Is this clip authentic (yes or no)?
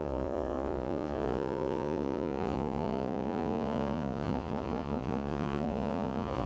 no